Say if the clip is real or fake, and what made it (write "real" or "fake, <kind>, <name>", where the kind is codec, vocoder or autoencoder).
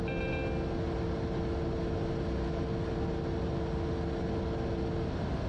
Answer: real